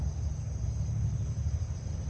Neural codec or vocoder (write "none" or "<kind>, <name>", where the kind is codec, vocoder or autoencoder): none